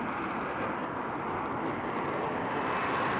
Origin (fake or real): real